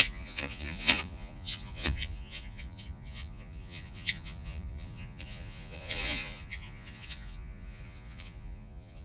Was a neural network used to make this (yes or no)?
yes